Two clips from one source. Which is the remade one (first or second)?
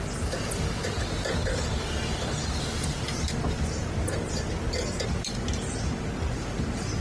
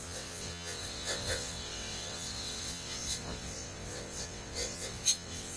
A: second